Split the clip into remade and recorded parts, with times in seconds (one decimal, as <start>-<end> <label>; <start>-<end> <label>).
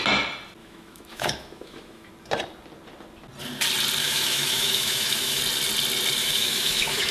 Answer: 0.0-0.6 recorded; 0.6-2.1 remade; 2.1-4.0 recorded; 4.0-5.4 remade; 5.4-6.2 recorded; 6.2-7.1 remade